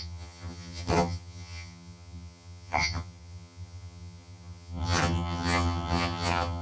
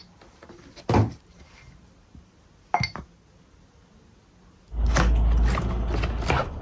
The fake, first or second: first